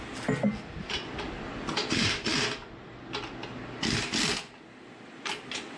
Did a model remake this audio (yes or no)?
no